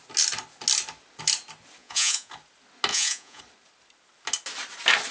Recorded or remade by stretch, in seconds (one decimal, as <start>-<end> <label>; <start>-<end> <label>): 0.0-1.8 recorded; 1.8-2.3 remade; 2.3-2.9 recorded; 2.9-3.4 remade; 3.4-5.1 recorded